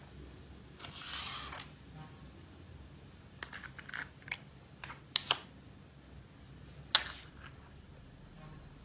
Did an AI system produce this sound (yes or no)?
no